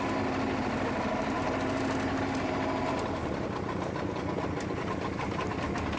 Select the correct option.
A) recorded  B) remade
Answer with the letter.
A